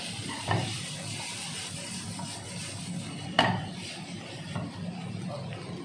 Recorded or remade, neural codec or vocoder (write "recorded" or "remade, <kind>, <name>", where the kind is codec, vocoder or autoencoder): recorded